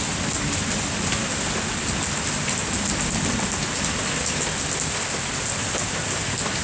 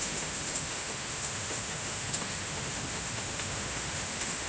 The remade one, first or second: second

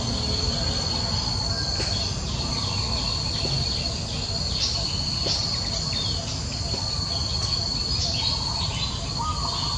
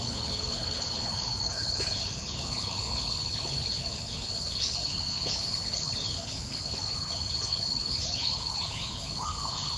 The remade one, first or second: second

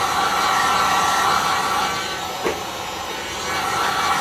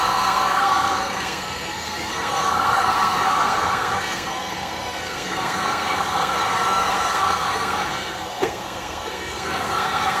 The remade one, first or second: second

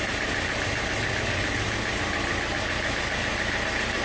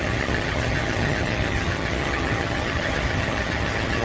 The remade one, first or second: second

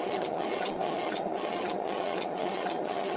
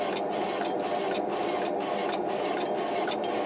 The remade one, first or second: first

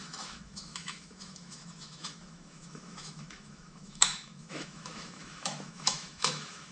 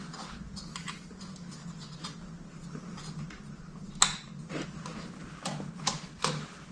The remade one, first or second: first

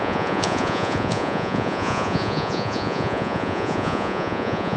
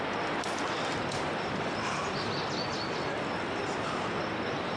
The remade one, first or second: first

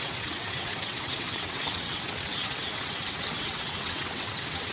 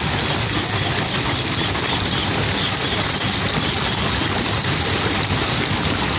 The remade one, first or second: first